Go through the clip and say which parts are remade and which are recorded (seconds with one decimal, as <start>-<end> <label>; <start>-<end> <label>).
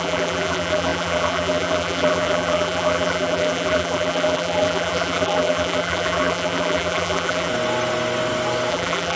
0.0-7.5 remade; 7.5-8.7 recorded; 8.7-9.2 remade